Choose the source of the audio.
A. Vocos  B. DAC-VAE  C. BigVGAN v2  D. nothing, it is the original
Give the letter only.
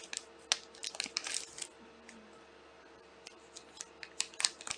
D